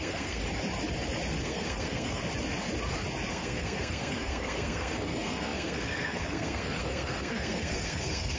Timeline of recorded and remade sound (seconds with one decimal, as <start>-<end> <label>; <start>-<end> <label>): 0.0-0.4 remade; 0.4-1.4 recorded; 1.4-2.2 remade; 2.2-3.3 recorded; 3.3-8.4 remade